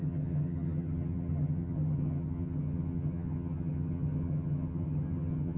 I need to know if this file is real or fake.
fake